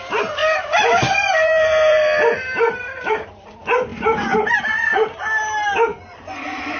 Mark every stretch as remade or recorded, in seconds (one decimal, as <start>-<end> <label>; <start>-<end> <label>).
0.0-0.4 recorded; 0.4-3.3 remade; 3.3-3.9 recorded; 3.9-5.2 remade; 5.2-5.9 recorded; 5.9-6.8 remade